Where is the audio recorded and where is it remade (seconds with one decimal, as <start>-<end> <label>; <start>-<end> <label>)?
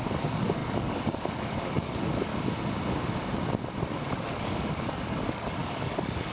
0.0-2.3 remade; 2.3-4.1 recorded; 4.1-6.3 remade